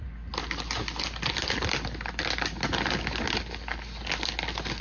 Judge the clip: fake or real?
real